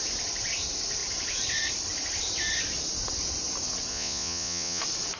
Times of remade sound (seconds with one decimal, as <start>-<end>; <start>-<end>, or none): 3.9-4.8